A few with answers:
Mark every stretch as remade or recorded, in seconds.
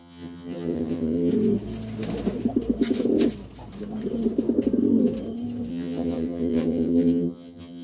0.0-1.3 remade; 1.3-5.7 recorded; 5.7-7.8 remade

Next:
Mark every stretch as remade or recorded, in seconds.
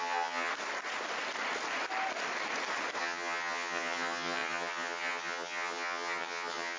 0.0-0.5 remade; 0.5-3.0 recorded; 3.0-6.8 remade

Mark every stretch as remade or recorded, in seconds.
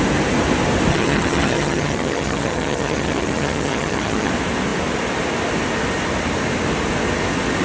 0.0-0.9 recorded; 0.9-4.3 remade; 4.3-7.6 recorded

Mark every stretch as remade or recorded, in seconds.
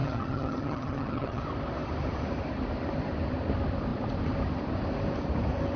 0.0-1.4 remade; 1.4-5.8 recorded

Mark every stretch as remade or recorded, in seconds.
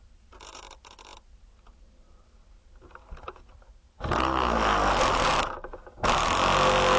0.0-7.0 recorded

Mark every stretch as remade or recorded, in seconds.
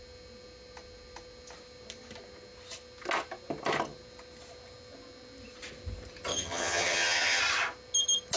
0.0-6.3 recorded; 6.3-7.4 remade; 7.4-8.4 recorded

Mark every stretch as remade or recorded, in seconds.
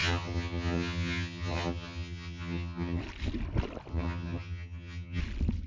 0.0-3.0 remade; 3.0-3.9 recorded; 3.9-5.2 remade; 5.2-5.7 recorded